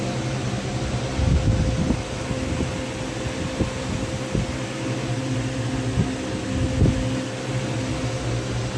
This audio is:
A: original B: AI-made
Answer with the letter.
A